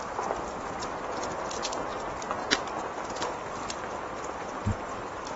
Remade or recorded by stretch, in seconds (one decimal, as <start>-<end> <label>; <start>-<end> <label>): 0.0-5.4 recorded